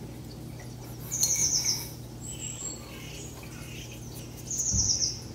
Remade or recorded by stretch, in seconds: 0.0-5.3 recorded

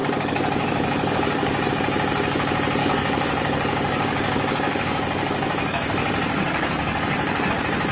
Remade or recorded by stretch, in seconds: 0.0-1.7 remade; 1.7-2.8 recorded; 2.8-7.5 remade; 7.5-7.9 recorded

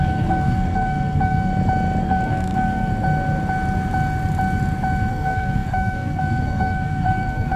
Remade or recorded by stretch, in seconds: 0.0-1.5 remade; 1.5-2.0 recorded; 2.0-2.9 remade; 2.9-5.1 recorded; 5.1-7.6 remade

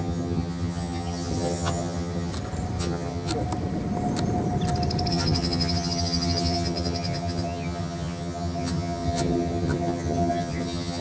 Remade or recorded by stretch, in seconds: 0.0-2.3 remade; 2.3-2.8 recorded; 2.8-3.3 remade; 3.3-5.1 recorded; 5.1-11.0 remade

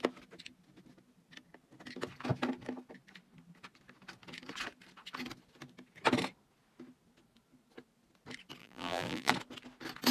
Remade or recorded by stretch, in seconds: 0.0-8.6 recorded; 8.6-9.3 remade; 9.3-10.1 recorded

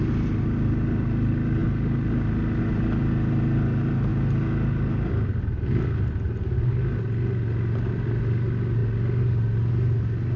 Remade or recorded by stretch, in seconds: 0.0-10.4 recorded

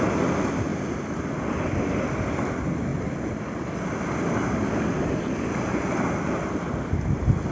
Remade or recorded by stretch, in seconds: 0.0-7.5 recorded

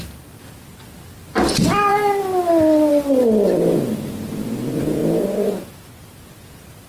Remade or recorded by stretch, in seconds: 0.0-1.9 remade; 1.9-2.9 recorded; 2.9-5.0 remade; 5.0-6.0 recorded; 6.0-6.9 remade